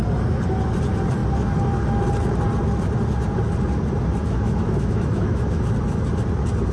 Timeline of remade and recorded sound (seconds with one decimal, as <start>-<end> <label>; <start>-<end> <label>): 0.0-4.2 recorded; 4.2-5.6 remade; 5.6-6.7 recorded